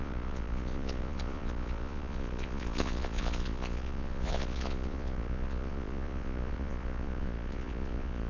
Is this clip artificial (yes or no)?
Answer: yes